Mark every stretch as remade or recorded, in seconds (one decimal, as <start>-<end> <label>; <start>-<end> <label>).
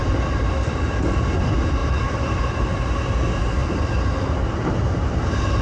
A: 0.0-0.8 remade; 0.8-1.8 recorded; 1.8-2.8 remade; 2.8-5.6 recorded